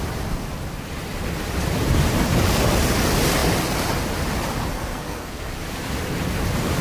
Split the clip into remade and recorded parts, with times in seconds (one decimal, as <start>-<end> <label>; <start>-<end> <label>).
0.0-4.7 recorded; 4.7-5.5 remade; 5.5-6.8 recorded